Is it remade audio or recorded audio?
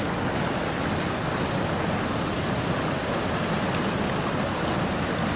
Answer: recorded